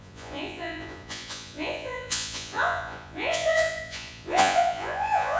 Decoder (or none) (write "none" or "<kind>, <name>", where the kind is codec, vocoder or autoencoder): vocoder, Vocos